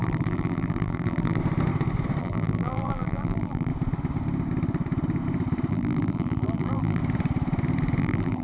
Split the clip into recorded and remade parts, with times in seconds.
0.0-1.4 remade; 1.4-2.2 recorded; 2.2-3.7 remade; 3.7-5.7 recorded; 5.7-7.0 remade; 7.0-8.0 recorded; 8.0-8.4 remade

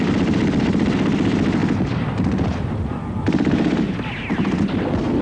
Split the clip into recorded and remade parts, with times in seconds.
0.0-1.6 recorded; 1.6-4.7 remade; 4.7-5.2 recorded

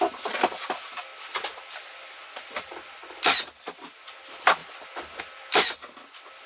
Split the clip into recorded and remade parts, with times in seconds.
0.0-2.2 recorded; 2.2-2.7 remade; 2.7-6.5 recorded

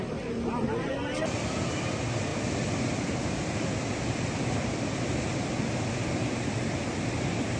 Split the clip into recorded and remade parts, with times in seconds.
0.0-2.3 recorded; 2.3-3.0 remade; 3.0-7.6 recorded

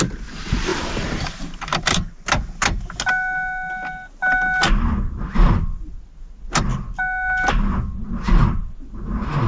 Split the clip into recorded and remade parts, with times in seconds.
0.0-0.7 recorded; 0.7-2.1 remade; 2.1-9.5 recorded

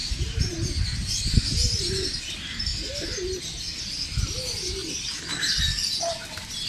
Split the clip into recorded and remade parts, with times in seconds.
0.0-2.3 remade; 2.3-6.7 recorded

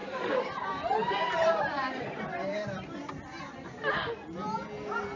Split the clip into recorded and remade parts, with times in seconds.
0.0-3.1 remade; 3.1-5.2 recorded

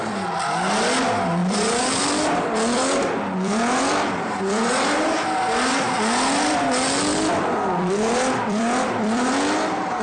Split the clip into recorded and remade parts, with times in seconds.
0.0-1.4 recorded; 1.4-4.7 remade; 4.7-7.1 recorded; 7.1-9.3 remade; 9.3-10.0 recorded